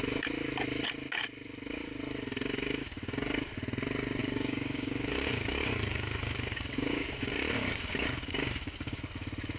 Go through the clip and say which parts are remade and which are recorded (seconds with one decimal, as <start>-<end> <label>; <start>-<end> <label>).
0.0-2.8 recorded; 2.8-3.5 remade; 3.5-4.2 recorded; 4.2-9.0 remade; 9.0-9.6 recorded